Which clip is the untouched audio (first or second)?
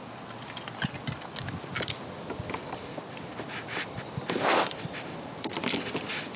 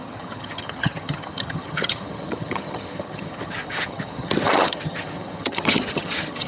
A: first